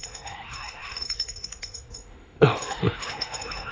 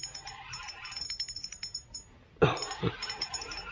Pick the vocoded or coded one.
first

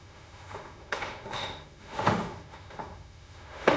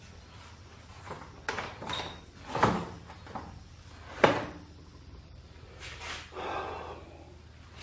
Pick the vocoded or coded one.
first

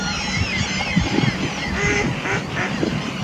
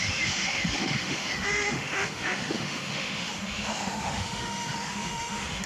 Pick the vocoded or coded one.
second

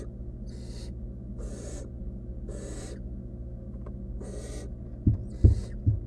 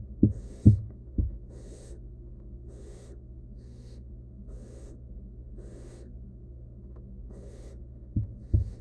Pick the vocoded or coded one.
second